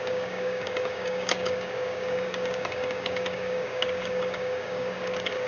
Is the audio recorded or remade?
remade